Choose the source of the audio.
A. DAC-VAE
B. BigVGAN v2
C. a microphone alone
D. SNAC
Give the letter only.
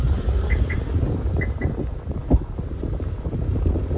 C